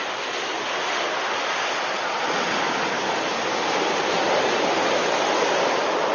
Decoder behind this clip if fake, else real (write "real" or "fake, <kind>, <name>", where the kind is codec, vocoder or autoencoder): real